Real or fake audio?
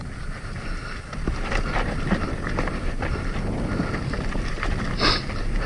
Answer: real